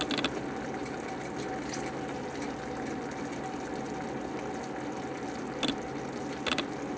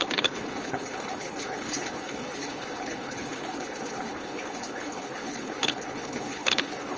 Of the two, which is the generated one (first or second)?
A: second